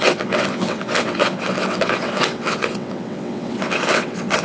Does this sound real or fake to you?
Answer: fake